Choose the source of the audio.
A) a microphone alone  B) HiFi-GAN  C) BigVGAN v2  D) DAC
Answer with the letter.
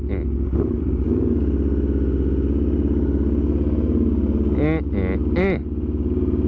A